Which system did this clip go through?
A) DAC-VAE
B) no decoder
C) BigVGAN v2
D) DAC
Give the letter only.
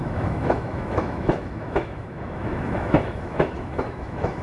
A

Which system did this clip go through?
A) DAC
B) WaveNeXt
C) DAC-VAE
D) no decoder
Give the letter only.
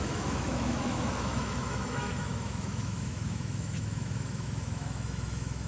C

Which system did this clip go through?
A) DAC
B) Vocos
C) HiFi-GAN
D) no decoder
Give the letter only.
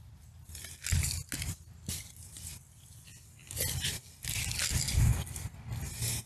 D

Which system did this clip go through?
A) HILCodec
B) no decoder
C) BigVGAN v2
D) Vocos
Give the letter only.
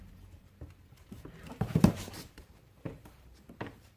C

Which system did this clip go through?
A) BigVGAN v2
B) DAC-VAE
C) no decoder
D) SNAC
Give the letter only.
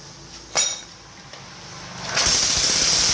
A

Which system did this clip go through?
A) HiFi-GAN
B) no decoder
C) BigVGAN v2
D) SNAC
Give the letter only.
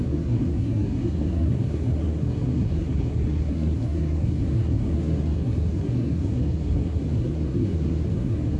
D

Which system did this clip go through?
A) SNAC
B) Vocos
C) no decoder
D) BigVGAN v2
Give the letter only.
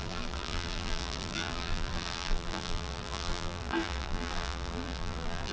D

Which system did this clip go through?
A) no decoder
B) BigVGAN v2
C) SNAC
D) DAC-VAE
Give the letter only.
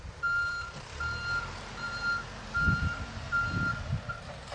B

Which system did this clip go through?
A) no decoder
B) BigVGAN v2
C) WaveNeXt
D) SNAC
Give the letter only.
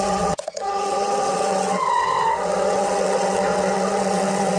C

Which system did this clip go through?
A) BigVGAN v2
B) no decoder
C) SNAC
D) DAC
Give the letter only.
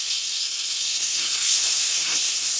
C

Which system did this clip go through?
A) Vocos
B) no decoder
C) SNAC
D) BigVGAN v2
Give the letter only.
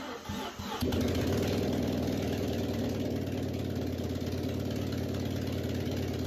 B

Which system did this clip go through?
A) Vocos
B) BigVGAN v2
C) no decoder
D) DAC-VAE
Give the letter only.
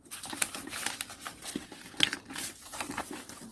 B